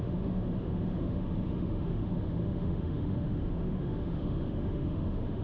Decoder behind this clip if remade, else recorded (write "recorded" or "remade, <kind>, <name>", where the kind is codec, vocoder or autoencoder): remade, autoencoder, DAC-VAE